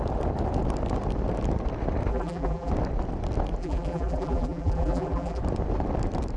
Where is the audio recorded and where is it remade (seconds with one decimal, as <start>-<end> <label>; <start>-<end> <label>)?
0.0-2.1 recorded; 2.1-2.7 remade; 2.7-3.6 recorded; 3.6-5.4 remade; 5.4-6.4 recorded